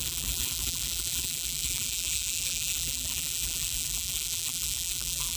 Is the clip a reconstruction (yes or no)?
yes